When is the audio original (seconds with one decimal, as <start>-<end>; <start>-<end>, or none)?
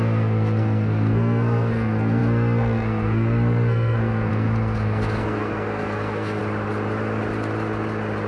6.4-8.3